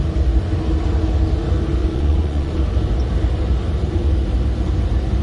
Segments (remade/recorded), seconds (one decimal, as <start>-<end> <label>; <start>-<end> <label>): 0.0-1.8 recorded; 1.8-2.6 remade; 2.6-5.2 recorded

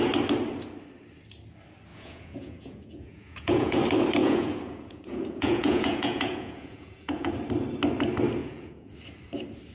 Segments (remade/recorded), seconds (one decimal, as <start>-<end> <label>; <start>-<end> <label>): 0.0-1.9 recorded; 1.9-3.8 remade; 3.8-4.2 recorded; 4.2-7.3 remade; 7.3-8.4 recorded; 8.4-8.9 remade; 8.9-9.7 recorded

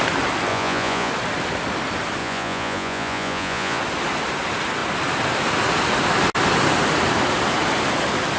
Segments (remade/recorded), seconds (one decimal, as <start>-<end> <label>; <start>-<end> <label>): 0.0-0.5 recorded; 0.5-1.1 remade; 1.1-2.2 recorded; 2.2-3.8 remade; 3.8-8.4 recorded